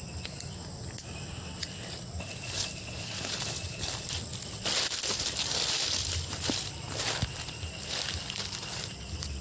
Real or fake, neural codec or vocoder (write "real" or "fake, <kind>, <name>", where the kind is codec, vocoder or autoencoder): real